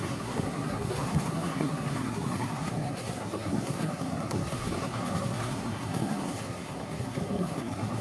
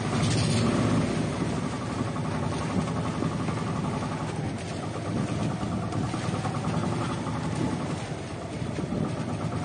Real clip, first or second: second